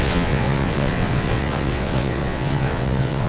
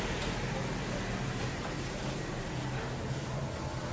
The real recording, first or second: second